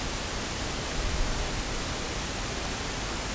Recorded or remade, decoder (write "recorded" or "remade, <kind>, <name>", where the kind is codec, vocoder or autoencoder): recorded